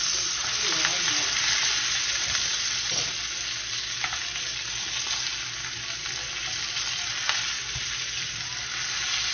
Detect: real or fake real